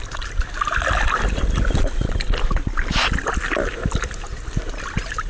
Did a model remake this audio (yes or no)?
no